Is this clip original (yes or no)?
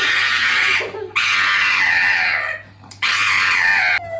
yes